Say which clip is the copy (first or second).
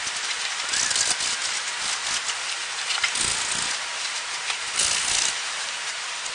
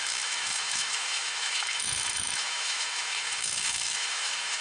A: second